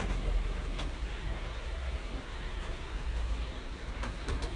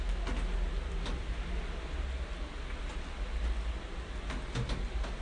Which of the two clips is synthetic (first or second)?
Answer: first